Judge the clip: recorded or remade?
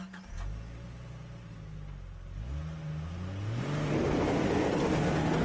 recorded